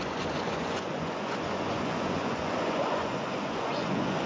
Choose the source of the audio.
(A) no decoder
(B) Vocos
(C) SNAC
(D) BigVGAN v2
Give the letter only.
B